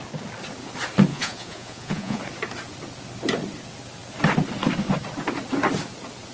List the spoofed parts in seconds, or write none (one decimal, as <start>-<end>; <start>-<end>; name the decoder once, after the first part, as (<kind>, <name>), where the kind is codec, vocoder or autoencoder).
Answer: 1.1-2.2 (vocoder, Vocos)